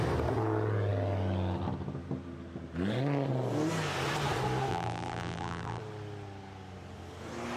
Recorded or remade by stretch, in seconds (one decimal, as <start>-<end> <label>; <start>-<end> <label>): 0.0-4.7 recorded; 4.7-5.8 remade; 5.8-7.6 recorded